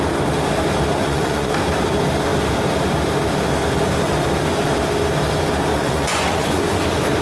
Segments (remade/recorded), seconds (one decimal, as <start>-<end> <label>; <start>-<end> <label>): 0.0-1.0 recorded; 1.0-1.5 remade; 1.5-5.7 recorded; 5.7-6.6 remade; 6.6-7.2 recorded